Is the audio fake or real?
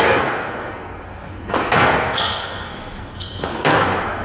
fake